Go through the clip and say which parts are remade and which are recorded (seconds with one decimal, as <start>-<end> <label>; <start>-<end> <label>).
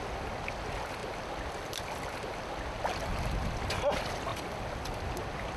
0.0-5.6 recorded